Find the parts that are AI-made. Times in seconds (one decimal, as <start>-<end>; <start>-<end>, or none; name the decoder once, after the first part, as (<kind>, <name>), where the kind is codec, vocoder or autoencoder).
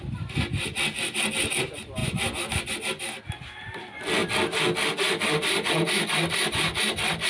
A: none